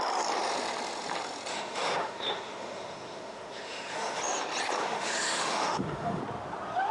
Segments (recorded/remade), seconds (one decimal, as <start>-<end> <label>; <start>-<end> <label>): 0.0-1.5 recorded; 1.5-4.2 remade; 4.2-4.8 recorded; 4.8-6.2 remade; 6.2-6.9 recorded